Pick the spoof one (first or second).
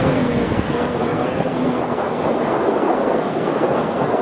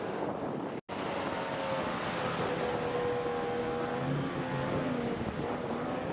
first